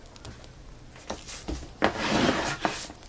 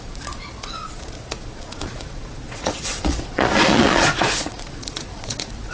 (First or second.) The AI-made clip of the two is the second